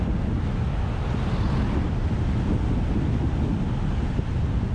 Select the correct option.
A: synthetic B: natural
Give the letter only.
B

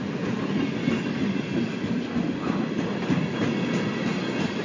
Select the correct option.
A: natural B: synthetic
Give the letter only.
A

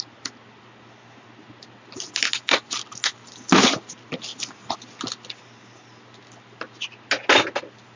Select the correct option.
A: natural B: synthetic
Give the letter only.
A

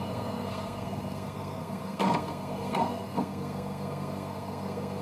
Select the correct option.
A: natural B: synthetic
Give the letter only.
B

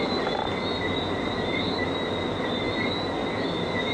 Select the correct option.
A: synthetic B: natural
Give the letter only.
B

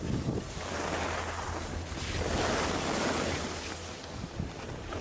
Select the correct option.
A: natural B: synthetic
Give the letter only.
A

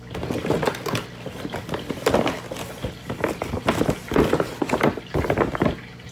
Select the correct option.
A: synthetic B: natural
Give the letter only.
B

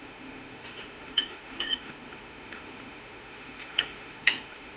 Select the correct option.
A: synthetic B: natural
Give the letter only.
A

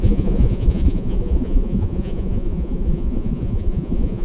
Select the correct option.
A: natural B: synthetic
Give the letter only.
B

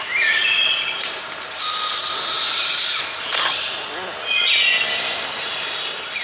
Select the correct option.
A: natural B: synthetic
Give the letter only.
A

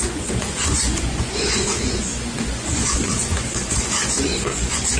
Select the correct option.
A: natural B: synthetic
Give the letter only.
B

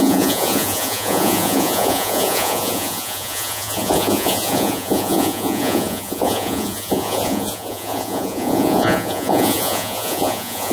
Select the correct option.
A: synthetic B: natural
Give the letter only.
A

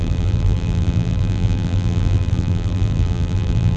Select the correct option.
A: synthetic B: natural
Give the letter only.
A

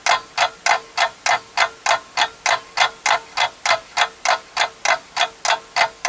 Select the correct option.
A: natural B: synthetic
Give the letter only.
A